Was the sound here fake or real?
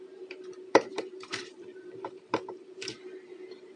fake